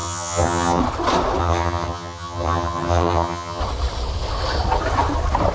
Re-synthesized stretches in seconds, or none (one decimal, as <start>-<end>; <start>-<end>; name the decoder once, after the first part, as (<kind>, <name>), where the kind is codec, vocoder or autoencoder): 0.0-0.8 (vocoder, HiFi-GAN); 1.4-3.6

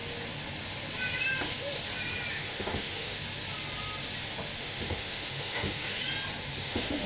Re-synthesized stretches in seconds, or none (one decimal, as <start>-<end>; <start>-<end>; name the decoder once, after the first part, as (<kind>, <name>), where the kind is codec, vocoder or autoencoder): 2.3-3.2 (autoencoder, DAC-VAE); 4.6-6.0; 6.6-7.1

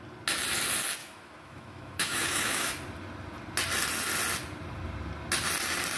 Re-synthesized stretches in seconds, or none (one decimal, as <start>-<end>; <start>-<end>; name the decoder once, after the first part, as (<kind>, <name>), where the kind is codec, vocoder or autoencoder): 1.0-2.7 (autoencoder, DAC-VAE)

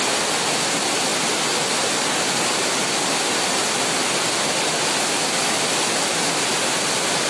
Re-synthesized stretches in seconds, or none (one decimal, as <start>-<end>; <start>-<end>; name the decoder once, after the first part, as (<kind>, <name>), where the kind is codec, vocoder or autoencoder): none

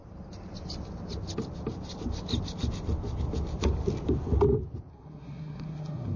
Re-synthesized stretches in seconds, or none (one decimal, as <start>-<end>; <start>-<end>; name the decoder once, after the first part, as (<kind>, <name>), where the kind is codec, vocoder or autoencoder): 4.9-6.2 (codec, SNAC)